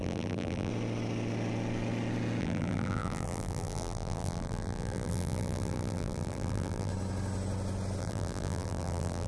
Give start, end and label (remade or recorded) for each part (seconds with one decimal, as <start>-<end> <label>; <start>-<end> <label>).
0.0-0.7 remade; 0.7-2.4 recorded; 2.4-6.9 remade; 6.9-8.0 recorded; 8.0-9.3 remade